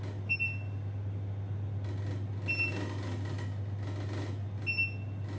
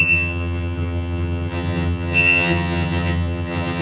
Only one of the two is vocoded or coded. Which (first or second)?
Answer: second